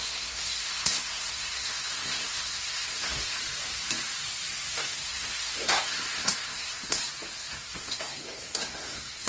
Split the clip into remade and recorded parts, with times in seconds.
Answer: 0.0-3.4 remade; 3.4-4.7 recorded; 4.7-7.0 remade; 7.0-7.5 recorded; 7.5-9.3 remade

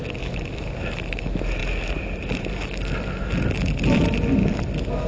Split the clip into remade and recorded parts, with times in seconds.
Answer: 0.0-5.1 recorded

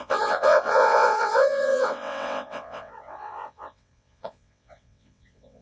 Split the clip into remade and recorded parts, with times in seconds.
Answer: 0.0-5.6 remade